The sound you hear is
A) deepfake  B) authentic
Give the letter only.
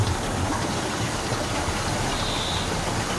B